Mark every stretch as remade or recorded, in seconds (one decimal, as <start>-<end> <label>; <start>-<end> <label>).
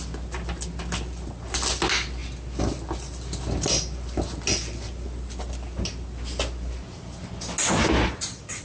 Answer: 0.0-8.6 recorded